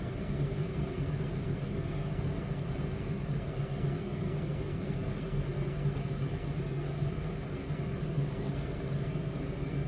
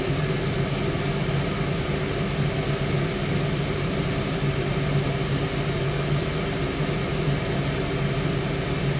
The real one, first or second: second